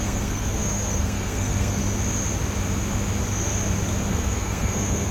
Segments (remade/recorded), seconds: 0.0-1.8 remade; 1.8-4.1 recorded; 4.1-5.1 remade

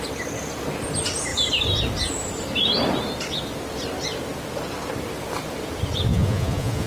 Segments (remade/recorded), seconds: 0.0-6.1 recorded; 6.1-6.9 remade